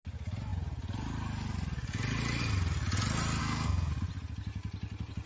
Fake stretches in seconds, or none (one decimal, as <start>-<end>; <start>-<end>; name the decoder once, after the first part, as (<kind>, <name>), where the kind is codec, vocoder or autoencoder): 3.4-3.9 (codec, SNAC)